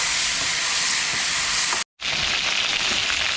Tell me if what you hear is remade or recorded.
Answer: recorded